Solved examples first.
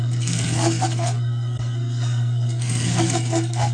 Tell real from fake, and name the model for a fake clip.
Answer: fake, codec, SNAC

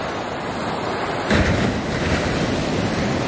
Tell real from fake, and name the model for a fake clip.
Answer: real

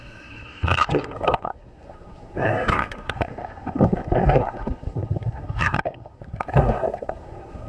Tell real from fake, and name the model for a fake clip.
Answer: fake, codec, SNAC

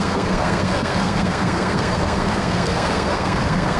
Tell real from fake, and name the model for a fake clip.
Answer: fake, codec, SNAC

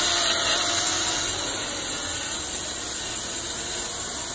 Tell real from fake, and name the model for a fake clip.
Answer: real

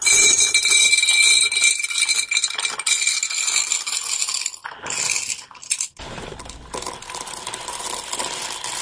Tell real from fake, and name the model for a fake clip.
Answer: real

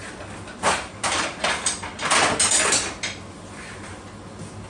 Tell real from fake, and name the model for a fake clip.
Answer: real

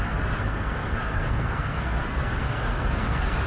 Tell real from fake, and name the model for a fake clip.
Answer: fake, codec, SNAC